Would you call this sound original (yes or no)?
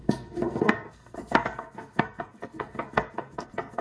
no